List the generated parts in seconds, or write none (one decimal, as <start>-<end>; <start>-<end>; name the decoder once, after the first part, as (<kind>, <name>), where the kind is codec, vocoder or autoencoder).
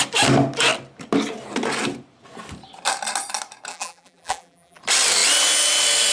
3.7-4.8 (vocoder, BigVGAN v2)